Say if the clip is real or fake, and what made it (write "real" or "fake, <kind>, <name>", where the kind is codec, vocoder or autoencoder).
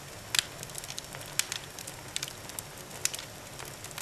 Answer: real